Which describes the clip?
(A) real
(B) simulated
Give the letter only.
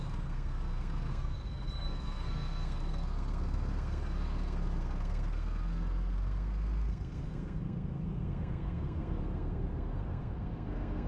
B